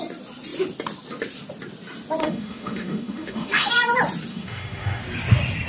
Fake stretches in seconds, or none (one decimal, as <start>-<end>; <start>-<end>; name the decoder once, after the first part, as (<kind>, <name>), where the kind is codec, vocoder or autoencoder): 2.2-3.7 (autoencoder, DAC-VAE); 4.3-5.0